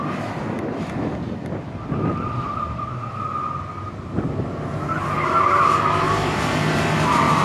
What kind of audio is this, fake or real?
real